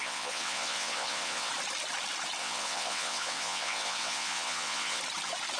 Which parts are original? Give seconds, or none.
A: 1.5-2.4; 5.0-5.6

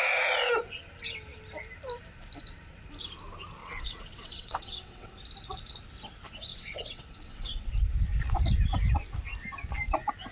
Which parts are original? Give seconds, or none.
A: 0.0-3.6; 5.1-6.5; 7.7-10.3

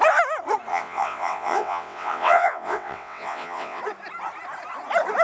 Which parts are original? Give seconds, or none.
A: 0.0-0.7; 3.8-5.2

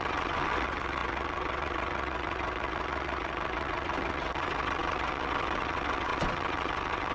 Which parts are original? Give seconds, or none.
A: none

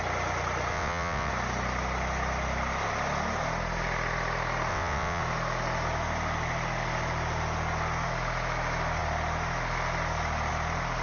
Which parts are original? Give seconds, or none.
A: 0.0-0.7; 1.3-4.7; 5.2-11.0

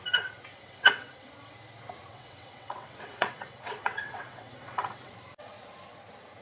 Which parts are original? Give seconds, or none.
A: 0.0-0.5; 1.5-2.1; 5.1-6.4